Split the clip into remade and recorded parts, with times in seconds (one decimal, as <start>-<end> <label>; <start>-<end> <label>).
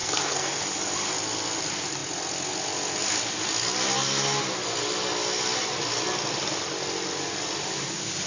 0.0-0.6 remade; 0.6-8.3 recorded